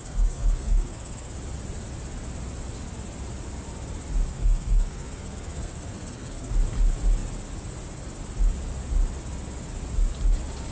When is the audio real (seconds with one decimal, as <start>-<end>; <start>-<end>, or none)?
1.3-4.3; 6.5-10.7